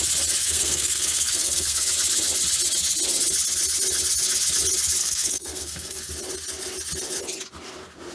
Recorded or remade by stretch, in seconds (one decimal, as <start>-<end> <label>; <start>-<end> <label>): 0.0-0.4 recorded; 0.4-1.9 remade; 1.9-5.0 recorded; 5.0-6.1 remade; 6.1-8.1 recorded